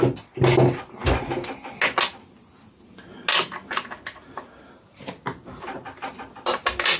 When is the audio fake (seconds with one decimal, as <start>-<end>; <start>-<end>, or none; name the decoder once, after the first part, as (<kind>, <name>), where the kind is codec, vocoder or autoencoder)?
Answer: none